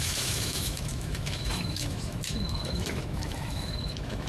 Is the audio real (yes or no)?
no